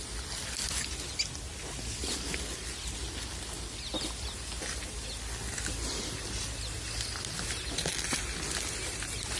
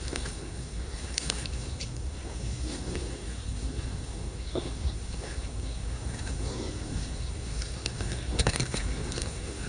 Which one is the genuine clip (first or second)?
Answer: first